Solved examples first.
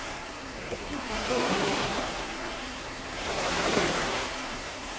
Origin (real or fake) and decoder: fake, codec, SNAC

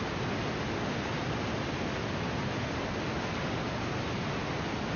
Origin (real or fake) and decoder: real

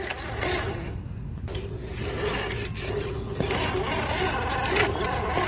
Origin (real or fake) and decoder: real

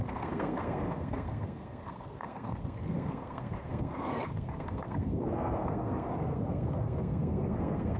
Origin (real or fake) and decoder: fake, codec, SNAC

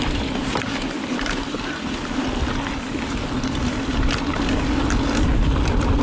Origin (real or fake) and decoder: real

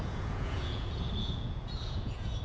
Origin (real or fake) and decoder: fake, vocoder, Vocos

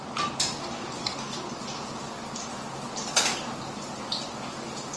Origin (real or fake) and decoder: real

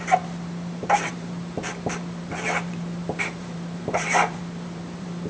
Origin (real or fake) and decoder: fake, vocoder, BigVGAN v2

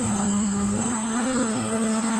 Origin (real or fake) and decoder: fake, codec, SNAC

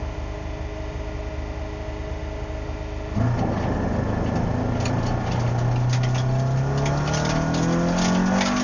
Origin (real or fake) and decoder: real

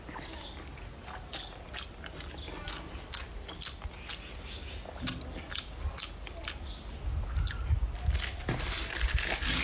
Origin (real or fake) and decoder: real